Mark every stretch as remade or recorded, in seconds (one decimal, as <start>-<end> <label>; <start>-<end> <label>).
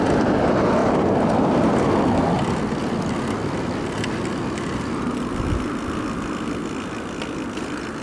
0.0-0.8 recorded; 0.8-1.9 remade; 1.9-8.0 recorded